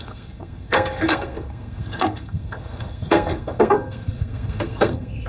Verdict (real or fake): fake